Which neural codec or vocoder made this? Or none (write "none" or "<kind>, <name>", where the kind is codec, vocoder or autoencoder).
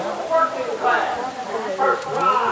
none